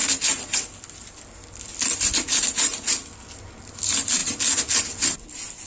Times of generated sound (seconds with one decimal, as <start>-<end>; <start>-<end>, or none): none